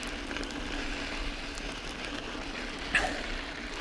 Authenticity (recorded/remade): recorded